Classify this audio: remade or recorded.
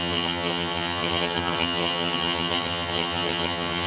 remade